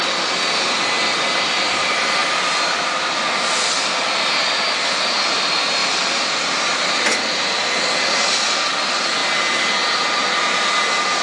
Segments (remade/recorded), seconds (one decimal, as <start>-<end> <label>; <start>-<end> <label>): 0.0-5.8 recorded; 5.8-8.3 remade; 8.3-11.2 recorded